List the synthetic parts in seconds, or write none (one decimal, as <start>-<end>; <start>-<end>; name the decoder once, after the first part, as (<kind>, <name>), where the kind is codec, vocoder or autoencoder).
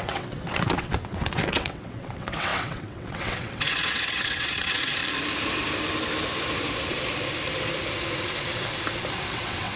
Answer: 0.0-5.0 (vocoder, WaveNeXt); 9.3-9.8